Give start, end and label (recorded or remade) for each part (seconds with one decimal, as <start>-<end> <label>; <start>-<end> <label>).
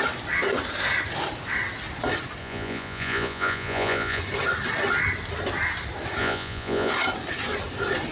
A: 0.0-2.4 recorded; 2.4-4.2 remade; 4.2-6.2 recorded; 6.2-6.9 remade; 6.9-8.1 recorded